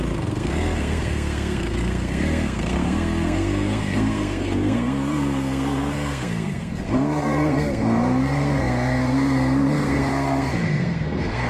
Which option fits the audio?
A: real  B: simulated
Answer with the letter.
B